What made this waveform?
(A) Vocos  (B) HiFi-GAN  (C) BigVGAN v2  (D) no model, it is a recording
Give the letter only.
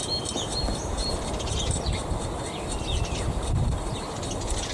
C